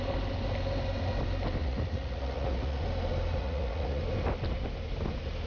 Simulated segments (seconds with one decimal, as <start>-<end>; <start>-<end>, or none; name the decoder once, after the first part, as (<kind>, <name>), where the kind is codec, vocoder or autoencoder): 1.6-2.8 (vocoder, Vocos); 3.4-4.0